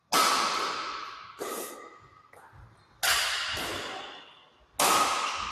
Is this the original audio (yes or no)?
yes